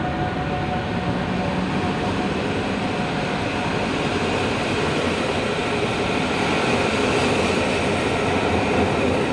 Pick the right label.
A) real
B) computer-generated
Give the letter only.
A